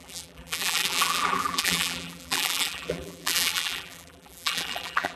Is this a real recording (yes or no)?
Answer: no